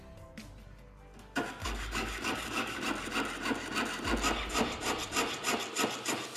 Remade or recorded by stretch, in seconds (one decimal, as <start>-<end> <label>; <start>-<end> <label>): 0.0-1.6 recorded; 1.6-2.8 remade; 2.8-6.4 recorded